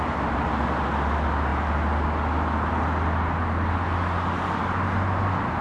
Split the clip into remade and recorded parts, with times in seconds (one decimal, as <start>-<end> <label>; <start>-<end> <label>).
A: 0.0-5.6 recorded